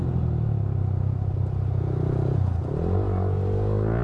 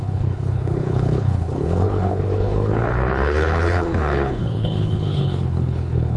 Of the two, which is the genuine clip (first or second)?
first